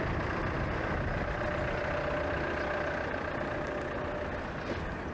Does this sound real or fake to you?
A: real